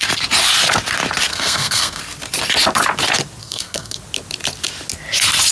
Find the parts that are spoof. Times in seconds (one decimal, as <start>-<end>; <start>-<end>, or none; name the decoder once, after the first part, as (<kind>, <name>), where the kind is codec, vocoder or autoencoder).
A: 1.3-2.0 (codec, SNAC); 3.4-4.0